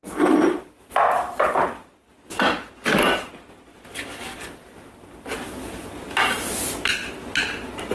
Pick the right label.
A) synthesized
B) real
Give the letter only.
B